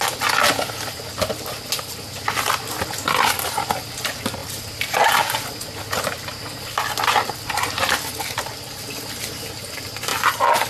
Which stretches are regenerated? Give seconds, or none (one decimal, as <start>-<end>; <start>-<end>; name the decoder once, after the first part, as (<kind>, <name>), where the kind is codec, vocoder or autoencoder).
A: none